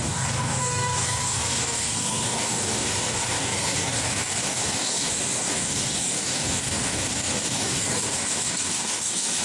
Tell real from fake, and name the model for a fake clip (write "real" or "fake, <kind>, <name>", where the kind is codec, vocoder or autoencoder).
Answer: fake, codec, DAC